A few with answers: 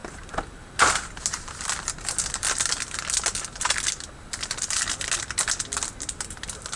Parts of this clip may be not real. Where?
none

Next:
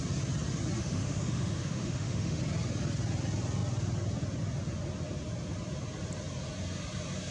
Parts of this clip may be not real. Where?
0.8-2.4 (autoencoder, DAC-VAE)

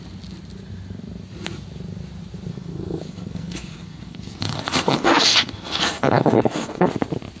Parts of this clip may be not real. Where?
2.5-6.9 (codec, SNAC)

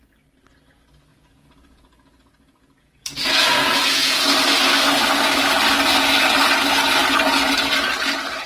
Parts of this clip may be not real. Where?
1.1-4.3 (vocoder, Vocos)

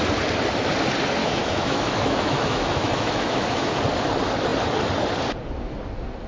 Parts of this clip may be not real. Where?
1.2-3.7 (autoencoder, DAC-VAE)

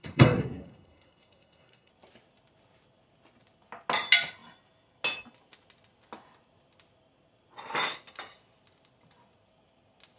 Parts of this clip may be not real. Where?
0.0-1.9 (codec, SNAC)